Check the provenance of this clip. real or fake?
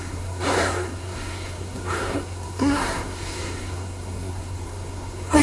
fake